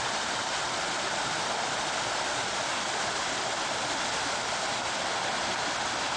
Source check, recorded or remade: recorded